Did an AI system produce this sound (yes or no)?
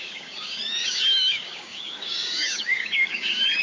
yes